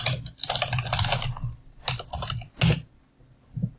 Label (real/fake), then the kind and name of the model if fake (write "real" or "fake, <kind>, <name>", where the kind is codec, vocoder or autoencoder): real